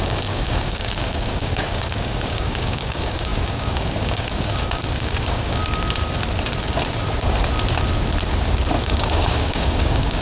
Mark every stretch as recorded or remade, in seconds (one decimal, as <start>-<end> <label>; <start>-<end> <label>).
0.0-5.6 remade; 5.6-8.8 recorded; 8.8-10.2 remade